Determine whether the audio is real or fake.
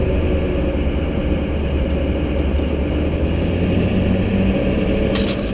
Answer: real